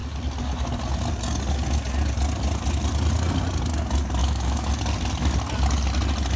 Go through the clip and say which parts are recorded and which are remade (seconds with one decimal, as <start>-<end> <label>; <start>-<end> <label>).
0.0-4.2 recorded; 4.2-4.7 remade; 4.7-6.4 recorded